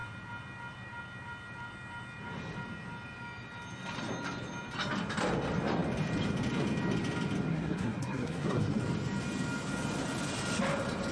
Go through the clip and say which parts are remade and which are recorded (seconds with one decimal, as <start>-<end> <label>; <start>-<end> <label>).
0.0-7.5 recorded; 7.5-8.8 remade; 8.8-11.1 recorded